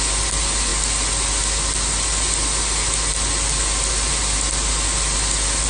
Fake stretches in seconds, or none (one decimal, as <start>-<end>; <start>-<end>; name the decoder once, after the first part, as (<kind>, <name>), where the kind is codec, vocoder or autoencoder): none